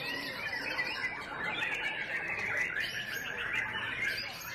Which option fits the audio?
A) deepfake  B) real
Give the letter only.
A